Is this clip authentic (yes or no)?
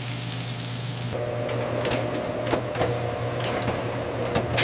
yes